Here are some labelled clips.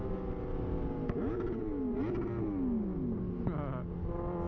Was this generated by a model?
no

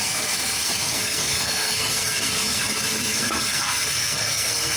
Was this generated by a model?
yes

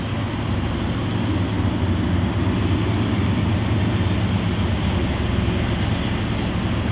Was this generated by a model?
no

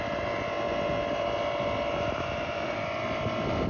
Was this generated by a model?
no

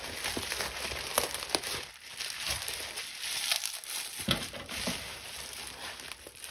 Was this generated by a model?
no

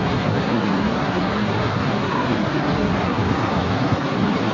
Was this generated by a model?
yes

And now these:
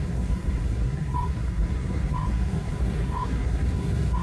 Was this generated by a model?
yes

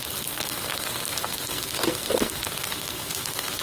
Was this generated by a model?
yes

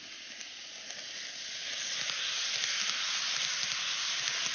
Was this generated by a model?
no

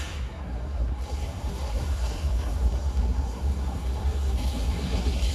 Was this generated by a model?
yes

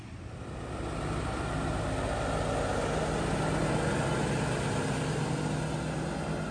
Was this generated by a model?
no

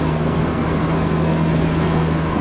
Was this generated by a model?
yes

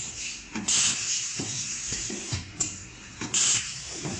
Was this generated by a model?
yes